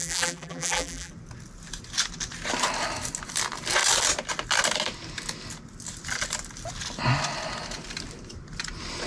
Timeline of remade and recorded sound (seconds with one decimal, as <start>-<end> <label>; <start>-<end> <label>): 0.0-1.1 remade; 1.1-9.1 recorded